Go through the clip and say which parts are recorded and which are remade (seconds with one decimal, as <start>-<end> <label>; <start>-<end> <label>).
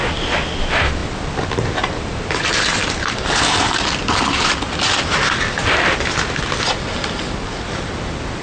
0.0-8.4 recorded